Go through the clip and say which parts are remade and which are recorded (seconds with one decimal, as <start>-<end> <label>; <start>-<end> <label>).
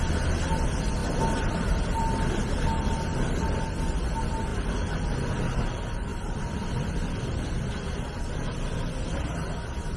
0.0-1.0 recorded; 1.0-2.0 remade; 2.0-6.1 recorded; 6.1-8.2 remade; 8.2-10.0 recorded